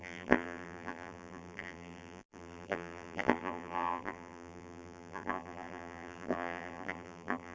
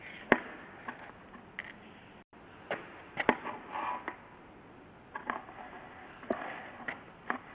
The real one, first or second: second